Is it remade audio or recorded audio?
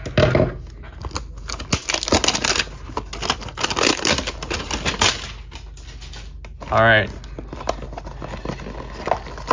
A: recorded